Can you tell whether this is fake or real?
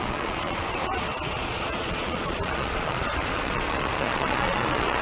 fake